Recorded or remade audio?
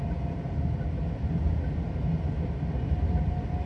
recorded